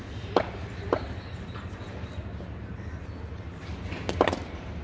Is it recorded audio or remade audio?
recorded